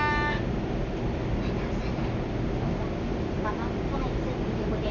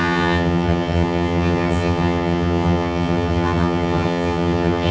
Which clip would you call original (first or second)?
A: first